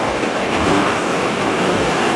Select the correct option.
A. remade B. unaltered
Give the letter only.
A